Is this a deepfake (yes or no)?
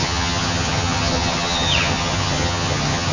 yes